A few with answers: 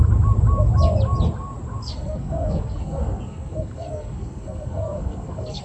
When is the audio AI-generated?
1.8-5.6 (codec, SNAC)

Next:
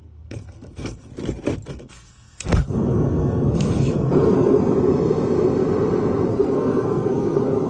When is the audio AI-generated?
0.0-1.1 (codec, SNAC); 1.7-4.6; 6.3-7.7

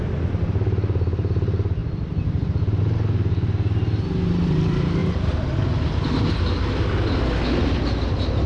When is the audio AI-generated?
none

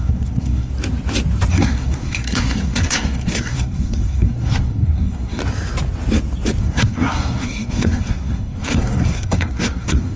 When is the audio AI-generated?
0.0-0.7 (codec, SNAC); 1.5-5.4; 6.6-10.2

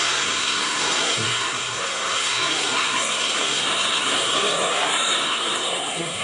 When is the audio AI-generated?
0.0-6.2 (codec, SNAC)

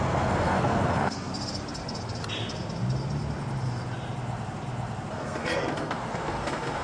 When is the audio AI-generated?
0.0-1.3 (codec, SNAC); 5.1-6.8

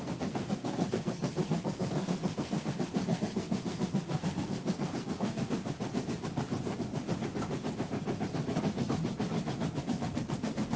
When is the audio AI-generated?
0.0-5.6 (codec, SNAC); 9.8-10.8